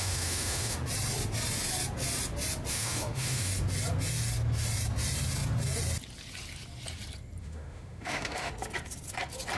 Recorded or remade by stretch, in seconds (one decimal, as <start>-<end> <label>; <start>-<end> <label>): 0.0-0.8 remade; 0.8-2.7 recorded; 2.7-3.5 remade; 3.5-7.4 recorded; 7.4-8.5 remade; 8.5-9.6 recorded